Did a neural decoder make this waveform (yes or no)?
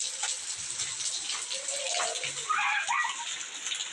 no